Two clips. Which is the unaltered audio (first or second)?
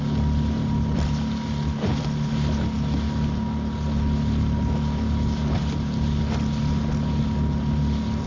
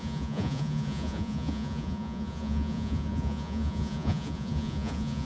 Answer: first